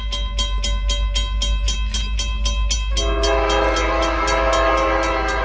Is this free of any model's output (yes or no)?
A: yes